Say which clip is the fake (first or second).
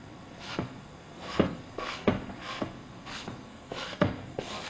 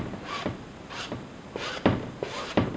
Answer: first